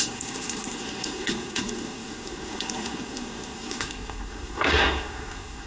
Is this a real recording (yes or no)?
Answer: no